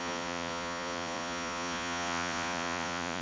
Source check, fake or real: fake